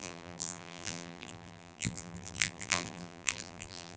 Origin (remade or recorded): remade